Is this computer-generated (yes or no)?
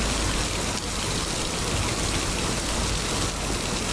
no